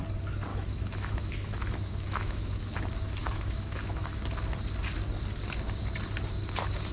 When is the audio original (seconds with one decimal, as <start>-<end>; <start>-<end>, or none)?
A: 0.0-0.5; 2.8-3.2; 4.2-6.9